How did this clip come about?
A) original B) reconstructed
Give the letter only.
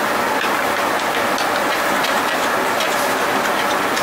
A